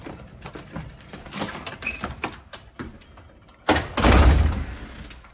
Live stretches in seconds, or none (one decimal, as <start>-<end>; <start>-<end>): 3.5-5.3